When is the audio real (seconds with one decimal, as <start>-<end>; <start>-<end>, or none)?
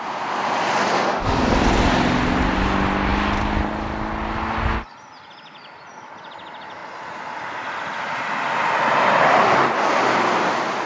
0.0-10.9